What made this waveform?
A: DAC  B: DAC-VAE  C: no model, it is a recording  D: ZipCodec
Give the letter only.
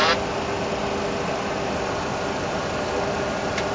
C